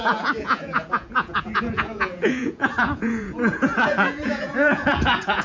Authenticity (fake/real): fake